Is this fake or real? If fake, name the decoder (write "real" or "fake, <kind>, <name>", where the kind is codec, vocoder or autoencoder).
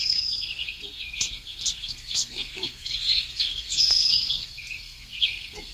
fake, codec, SNAC